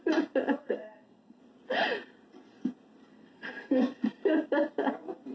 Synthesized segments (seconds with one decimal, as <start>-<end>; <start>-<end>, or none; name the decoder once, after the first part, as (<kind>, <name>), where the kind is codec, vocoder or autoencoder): 0.6-1.4 (codec, SNAC); 3.1-3.8